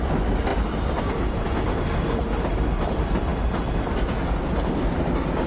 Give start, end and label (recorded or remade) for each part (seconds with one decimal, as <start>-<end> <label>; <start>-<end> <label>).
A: 0.0-5.5 recorded